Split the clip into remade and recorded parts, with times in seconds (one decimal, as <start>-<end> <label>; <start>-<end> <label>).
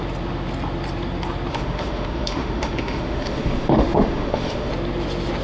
0.0-1.5 recorded; 1.5-4.7 remade; 4.7-5.4 recorded